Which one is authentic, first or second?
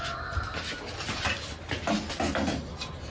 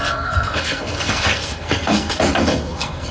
first